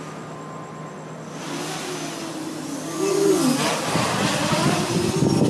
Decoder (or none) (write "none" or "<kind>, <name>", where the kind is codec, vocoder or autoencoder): none